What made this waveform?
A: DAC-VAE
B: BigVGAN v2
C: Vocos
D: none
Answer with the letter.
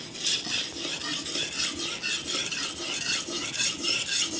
D